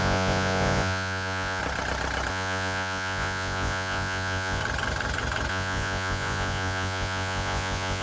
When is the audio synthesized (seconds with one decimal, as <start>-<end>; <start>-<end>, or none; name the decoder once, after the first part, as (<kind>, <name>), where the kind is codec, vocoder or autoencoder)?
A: 0.0-1.6 (vocoder, Vocos); 2.3-4.6; 5.5-8.0

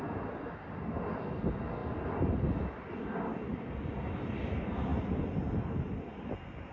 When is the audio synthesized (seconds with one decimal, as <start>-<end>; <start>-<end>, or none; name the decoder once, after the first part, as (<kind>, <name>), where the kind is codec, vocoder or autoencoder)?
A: none

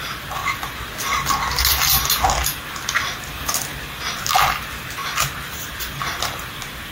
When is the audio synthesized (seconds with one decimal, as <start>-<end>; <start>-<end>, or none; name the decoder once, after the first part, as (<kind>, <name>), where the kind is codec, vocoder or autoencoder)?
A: none

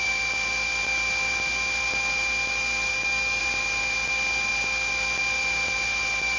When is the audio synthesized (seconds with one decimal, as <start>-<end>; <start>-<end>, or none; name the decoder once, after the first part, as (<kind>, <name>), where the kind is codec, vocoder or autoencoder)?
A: 2.9-3.4 (autoencoder, DAC-VAE)

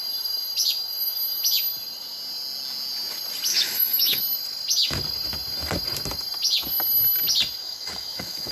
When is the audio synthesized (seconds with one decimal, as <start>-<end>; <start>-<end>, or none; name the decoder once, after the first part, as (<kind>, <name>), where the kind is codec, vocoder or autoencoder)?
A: 3.5-4.2 (autoencoder, DAC-VAE); 7.6-8.5